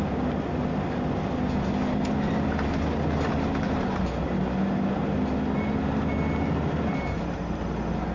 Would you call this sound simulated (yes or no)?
no